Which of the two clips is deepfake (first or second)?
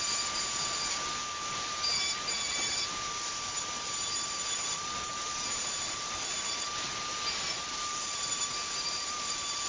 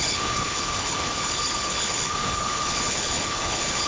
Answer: second